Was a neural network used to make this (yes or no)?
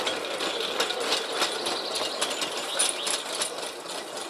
no